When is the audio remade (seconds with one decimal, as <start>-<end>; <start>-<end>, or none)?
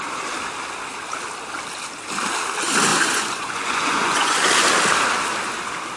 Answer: 2.9-4.5